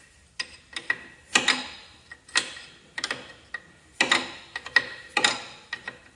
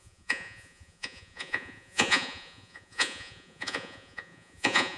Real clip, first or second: first